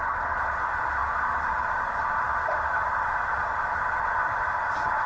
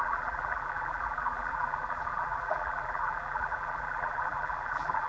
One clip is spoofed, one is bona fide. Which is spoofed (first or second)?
second